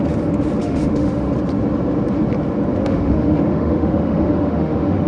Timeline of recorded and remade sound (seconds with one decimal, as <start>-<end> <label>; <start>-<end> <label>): 0.0-0.6 recorded; 0.6-1.3 remade; 1.3-2.8 recorded; 2.8-5.1 remade